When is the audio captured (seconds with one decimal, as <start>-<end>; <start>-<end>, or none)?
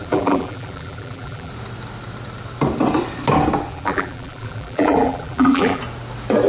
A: 1.5-3.7; 5.8-6.5